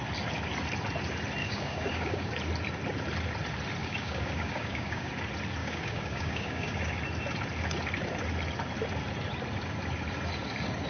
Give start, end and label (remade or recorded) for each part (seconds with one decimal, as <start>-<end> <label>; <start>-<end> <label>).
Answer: 0.0-1.4 recorded; 1.4-2.3 remade; 2.3-3.8 recorded; 3.8-5.1 remade; 5.1-5.6 recorded; 5.6-7.0 remade; 7.0-10.9 recorded